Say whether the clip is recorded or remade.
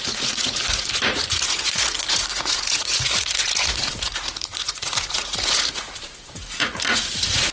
remade